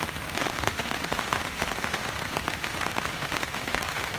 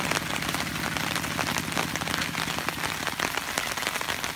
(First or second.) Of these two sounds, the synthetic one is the first